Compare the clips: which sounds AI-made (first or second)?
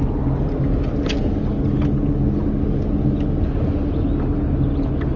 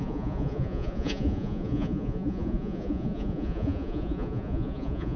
second